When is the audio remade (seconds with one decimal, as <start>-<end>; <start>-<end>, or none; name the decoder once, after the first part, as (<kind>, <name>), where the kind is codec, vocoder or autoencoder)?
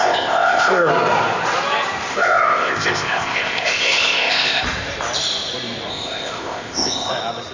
0.0-0.9 (codec, ZipCodec); 2.1-4.6; 5.9-7.1